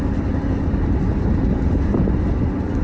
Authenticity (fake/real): real